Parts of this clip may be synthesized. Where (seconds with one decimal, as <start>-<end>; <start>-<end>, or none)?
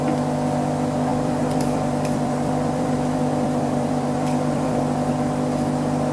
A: 1.1-4.8